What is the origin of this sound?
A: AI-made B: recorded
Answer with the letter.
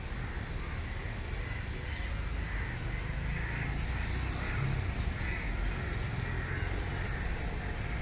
B